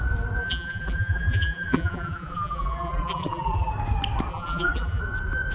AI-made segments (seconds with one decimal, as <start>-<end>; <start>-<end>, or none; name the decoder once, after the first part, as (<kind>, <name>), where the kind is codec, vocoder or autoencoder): 0.4-3.7 (vocoder, BigVGAN v2); 4.3-5.0

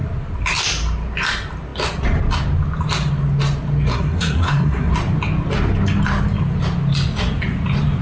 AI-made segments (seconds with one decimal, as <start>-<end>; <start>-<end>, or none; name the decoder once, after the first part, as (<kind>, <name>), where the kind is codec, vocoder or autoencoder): 3.9-4.9 (codec, SNAC)

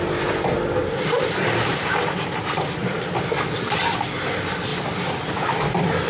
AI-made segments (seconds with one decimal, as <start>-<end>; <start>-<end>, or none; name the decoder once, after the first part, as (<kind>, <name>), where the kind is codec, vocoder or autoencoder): 0.8-2.4 (vocoder, BigVGAN v2); 2.8-3.4; 4.7-5.6

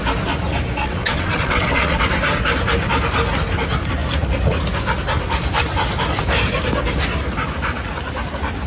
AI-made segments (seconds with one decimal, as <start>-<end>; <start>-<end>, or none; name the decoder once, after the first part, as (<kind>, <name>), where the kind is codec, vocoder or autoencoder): 0.8-2.0 (vocoder, WaveNeXt)

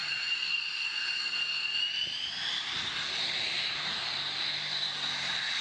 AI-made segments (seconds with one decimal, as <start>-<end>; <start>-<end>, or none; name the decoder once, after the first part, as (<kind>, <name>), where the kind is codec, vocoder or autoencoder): none

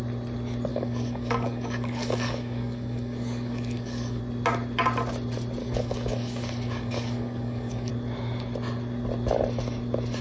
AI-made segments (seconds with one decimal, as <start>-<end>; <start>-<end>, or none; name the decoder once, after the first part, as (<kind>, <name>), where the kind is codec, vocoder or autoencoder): 0.7-4.2 (codec, DAC); 5.6-7.9

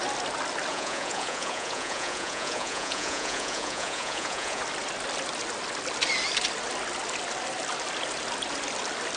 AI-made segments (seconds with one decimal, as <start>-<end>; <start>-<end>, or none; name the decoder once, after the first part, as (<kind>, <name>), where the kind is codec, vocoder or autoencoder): 0.7-4.6 (vocoder, Vocos)